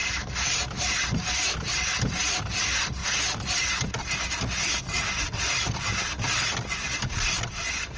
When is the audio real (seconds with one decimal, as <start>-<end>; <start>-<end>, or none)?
0.0-8.0